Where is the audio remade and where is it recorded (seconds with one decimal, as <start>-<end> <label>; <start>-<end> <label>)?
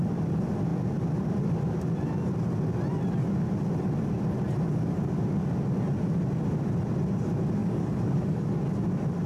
0.0-7.6 recorded; 7.6-8.6 remade; 8.6-9.3 recorded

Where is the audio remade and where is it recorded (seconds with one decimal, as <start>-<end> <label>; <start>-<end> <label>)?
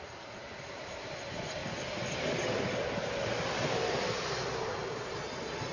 0.0-5.7 recorded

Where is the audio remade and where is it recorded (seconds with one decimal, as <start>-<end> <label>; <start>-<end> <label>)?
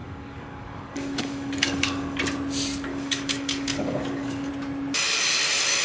0.0-2.2 remade; 2.2-2.9 recorded; 2.9-4.5 remade; 4.5-5.8 recorded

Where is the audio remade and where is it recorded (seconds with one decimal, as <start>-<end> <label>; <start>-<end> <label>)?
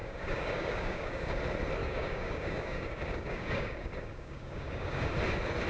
0.0-1.4 remade; 1.4-1.8 recorded; 1.8-5.1 remade; 5.1-5.7 recorded